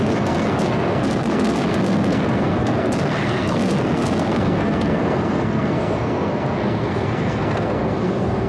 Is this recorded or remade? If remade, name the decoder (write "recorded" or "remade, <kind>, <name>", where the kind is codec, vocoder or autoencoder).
remade, codec, SNAC